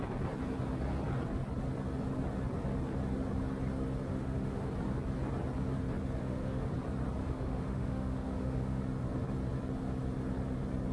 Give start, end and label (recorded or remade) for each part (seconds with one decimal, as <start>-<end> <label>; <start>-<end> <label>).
0.0-4.1 recorded; 4.1-4.7 remade; 4.7-6.2 recorded; 6.2-6.7 remade; 6.7-7.2 recorded; 7.2-8.8 remade; 8.8-10.9 recorded